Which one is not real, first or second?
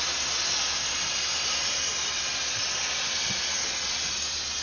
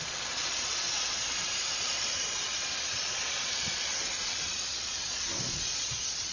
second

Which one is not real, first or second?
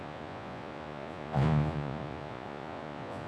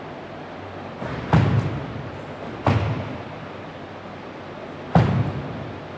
first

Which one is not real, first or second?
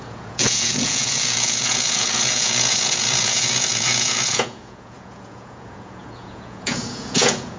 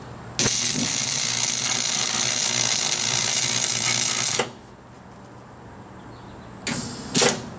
first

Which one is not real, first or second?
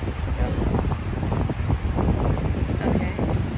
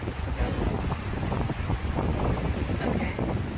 second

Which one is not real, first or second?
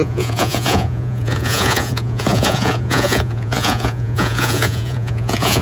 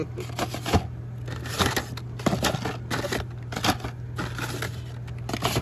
first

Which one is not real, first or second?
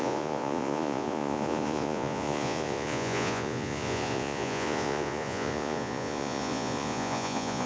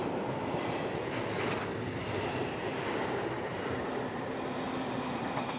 first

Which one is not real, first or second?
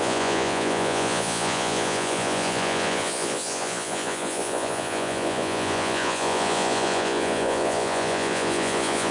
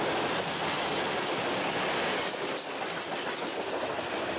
first